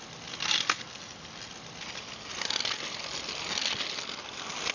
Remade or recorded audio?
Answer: recorded